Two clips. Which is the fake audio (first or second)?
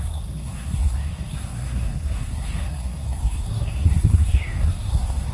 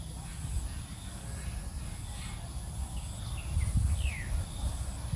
first